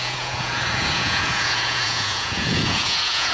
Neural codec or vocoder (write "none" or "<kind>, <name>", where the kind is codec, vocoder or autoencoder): vocoder, Vocos